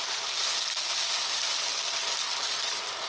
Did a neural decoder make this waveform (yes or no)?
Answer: no